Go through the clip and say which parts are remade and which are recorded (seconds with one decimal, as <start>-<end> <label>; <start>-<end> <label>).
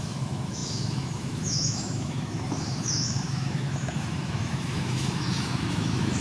0.0-6.2 remade